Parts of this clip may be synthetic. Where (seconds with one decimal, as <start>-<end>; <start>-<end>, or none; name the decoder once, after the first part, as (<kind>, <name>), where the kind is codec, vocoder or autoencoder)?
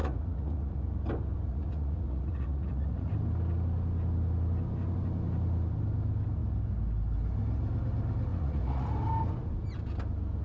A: 0.0-0.8 (vocoder, Vocos); 1.5-3.1; 8.3-8.9